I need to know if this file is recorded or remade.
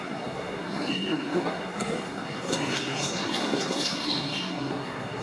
remade